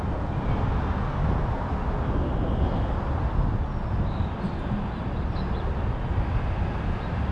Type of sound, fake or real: real